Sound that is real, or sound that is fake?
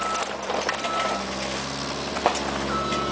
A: real